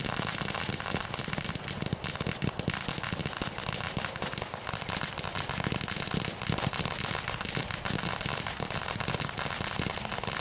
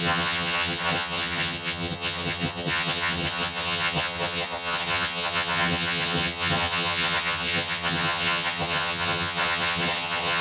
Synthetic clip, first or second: second